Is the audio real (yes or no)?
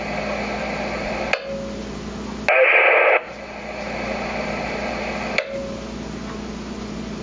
yes